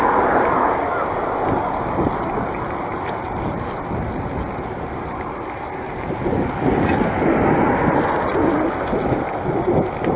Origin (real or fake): real